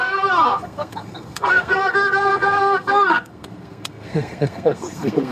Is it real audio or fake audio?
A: fake